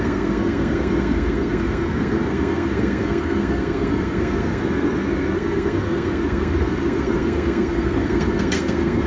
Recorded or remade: remade